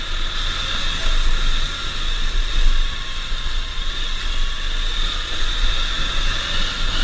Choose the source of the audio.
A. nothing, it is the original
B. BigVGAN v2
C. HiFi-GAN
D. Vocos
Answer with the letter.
A